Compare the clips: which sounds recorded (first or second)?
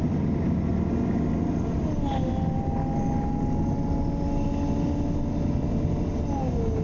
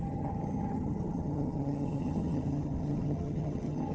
first